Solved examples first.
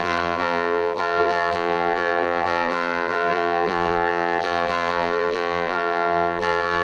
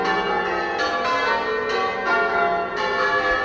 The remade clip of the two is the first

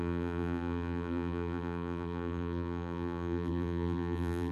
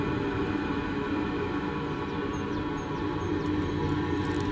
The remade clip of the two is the first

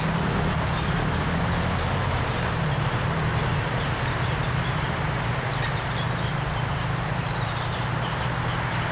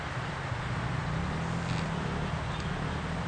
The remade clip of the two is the first